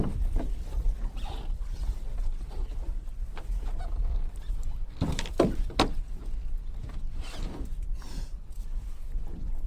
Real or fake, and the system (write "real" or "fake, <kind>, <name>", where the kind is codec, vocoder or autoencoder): real